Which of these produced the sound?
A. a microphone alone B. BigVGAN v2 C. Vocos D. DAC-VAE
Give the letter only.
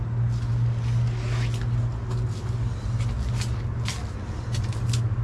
A